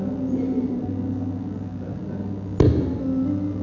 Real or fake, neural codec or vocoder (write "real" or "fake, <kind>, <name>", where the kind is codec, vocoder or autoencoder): real